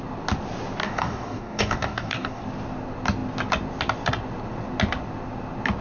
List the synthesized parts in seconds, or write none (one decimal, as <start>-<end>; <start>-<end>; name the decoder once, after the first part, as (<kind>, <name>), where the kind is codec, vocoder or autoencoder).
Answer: 0.8-2.4 (codec, DAC)